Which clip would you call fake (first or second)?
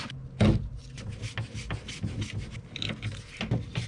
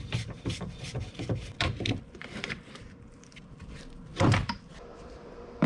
second